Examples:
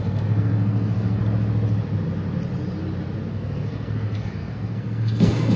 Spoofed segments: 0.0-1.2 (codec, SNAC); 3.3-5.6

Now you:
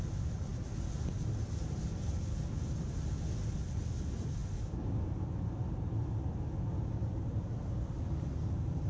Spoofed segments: none

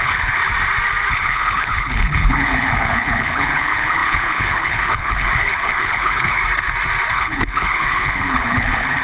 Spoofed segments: 0.0-0.4 (codec, HILCodec); 1.1-6.4; 7.1-9.0

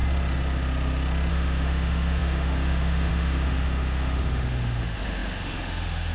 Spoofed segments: 1.3-6.1 (autoencoder, DAC-VAE)

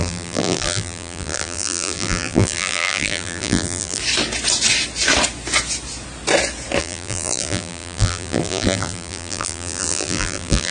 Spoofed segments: 0.0-4.0 (vocoder, BigVGAN v2); 6.8-10.7

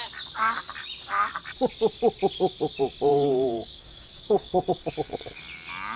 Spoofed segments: 3.1-5.4 (codec, DAC)